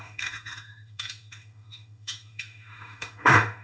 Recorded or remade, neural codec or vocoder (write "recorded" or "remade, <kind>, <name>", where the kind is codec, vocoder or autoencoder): remade, autoencoder, DAC-VAE